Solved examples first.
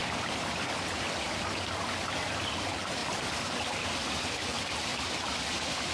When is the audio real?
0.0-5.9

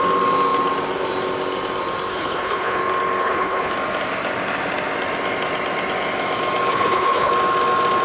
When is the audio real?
0.0-2.1; 2.8-3.2; 3.7-6.7; 7.3-8.0